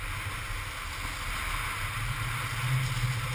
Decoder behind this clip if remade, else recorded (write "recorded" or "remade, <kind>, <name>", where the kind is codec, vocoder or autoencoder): recorded